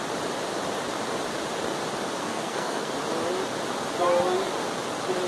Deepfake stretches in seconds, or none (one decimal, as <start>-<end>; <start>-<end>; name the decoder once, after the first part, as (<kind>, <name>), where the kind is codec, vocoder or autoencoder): 2.2-2.9 (codec, SNAC)